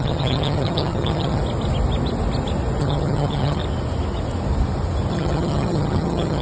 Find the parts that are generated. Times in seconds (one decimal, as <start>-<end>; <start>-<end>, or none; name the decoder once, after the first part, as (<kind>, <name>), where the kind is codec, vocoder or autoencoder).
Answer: 0.0-1.4 (vocoder, HiFi-GAN); 2.8-3.6; 5.1-6.4